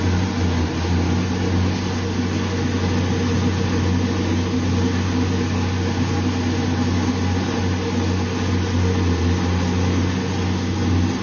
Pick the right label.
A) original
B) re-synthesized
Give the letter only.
A